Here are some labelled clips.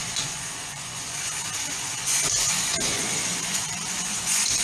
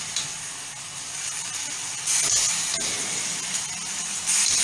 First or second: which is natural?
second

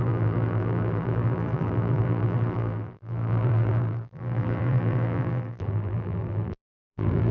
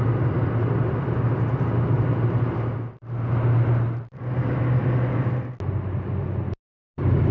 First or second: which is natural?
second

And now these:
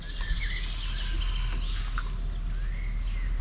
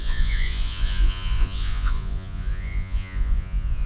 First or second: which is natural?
first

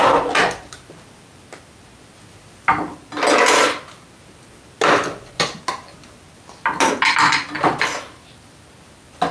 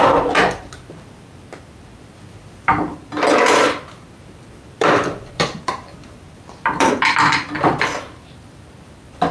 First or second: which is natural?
first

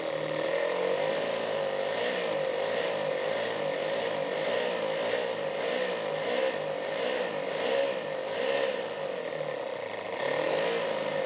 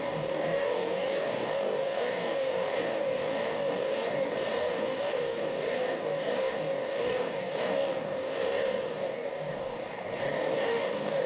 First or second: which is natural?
first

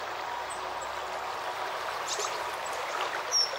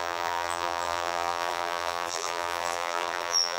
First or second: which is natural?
first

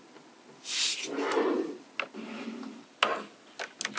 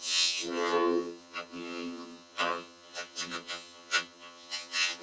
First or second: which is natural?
first